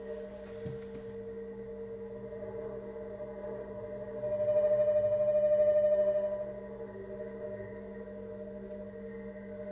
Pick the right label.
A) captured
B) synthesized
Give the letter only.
A